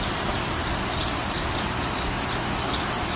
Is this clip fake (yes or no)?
no